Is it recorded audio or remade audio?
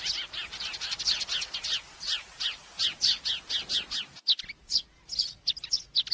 recorded